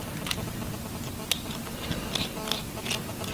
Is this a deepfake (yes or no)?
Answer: no